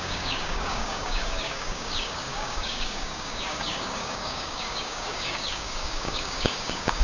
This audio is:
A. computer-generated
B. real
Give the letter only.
A